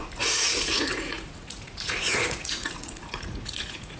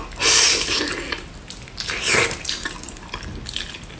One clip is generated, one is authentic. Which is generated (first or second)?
first